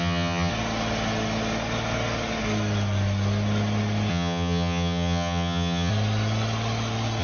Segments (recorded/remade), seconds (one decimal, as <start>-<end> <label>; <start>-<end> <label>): 0.0-0.5 remade; 0.5-4.1 recorded; 4.1-5.9 remade; 5.9-7.2 recorded